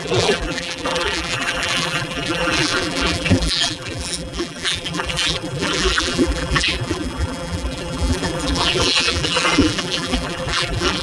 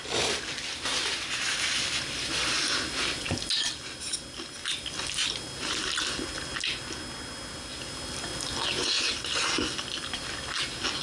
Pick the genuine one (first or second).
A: second